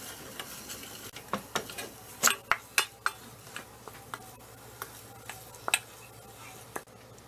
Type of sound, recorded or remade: recorded